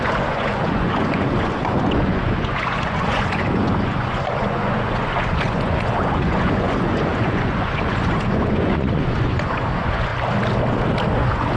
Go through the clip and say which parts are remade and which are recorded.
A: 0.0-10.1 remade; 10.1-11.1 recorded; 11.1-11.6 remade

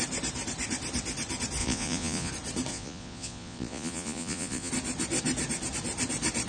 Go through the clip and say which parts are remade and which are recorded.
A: 0.0-1.6 recorded; 1.6-2.3 remade; 2.3-2.7 recorded; 2.7-4.7 remade; 4.7-6.5 recorded

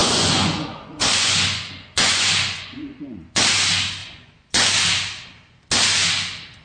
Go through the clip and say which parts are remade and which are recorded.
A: 0.0-3.4 remade; 3.4-4.0 recorded; 4.0-4.7 remade; 4.7-6.6 recorded

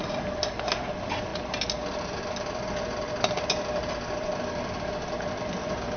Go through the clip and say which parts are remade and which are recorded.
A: 0.0-6.0 recorded

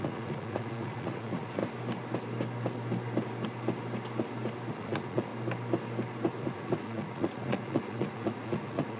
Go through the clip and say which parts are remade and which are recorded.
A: 0.0-1.6 remade; 1.6-4.7 recorded; 4.7-5.3 remade; 5.3-6.4 recorded; 6.4-9.0 remade

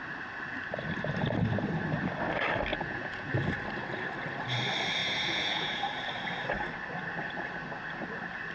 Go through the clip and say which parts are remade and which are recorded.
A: 0.0-2.7 recorded; 2.7-3.3 remade; 3.3-5.0 recorded; 5.0-5.8 remade; 5.8-8.5 recorded

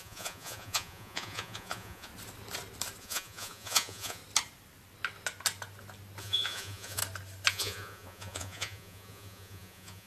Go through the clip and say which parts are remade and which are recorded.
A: 0.0-2.1 remade; 2.1-3.0 recorded; 3.0-4.2 remade; 4.2-6.2 recorded; 6.2-7.0 remade; 7.0-7.5 recorded; 7.5-10.1 remade

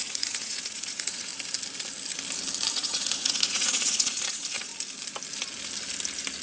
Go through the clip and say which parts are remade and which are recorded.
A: 0.0-1.3 remade; 1.3-2.7 recorded; 2.7-4.7 remade; 4.7-6.4 recorded